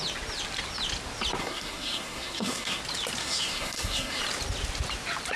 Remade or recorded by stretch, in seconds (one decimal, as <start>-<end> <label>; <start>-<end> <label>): 0.0-1.4 recorded; 1.4-2.8 remade; 2.8-3.2 recorded; 3.2-4.2 remade; 4.2-5.4 recorded